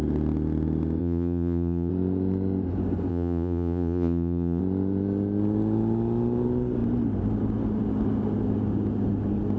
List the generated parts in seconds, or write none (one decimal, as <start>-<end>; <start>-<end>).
1.0-1.9; 3.1-4.6